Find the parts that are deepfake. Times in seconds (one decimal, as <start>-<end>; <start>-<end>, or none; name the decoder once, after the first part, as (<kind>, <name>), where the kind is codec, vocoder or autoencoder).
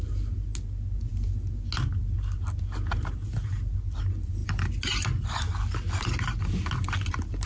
none